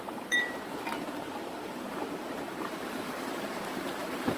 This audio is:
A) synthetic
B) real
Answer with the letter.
A